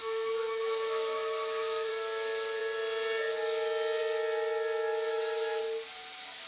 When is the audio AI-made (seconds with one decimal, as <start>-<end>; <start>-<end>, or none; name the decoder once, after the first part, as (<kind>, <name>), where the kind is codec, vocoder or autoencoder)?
0.0-1.9 (autoencoder, DAC-VAE); 5.1-5.6